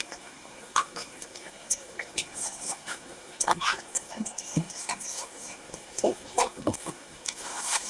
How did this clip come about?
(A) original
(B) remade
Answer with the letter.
B